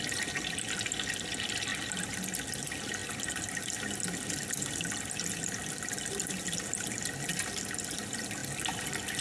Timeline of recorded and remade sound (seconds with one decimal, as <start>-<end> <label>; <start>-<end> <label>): 0.0-9.2 recorded